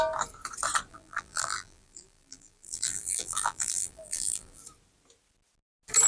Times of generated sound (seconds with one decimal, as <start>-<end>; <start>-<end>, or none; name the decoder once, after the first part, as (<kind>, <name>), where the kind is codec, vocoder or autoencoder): 0.9-4.6 (vocoder, BigVGAN v2)